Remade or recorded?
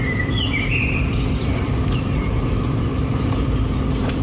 remade